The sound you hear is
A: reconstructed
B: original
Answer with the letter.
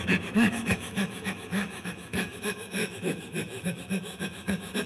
A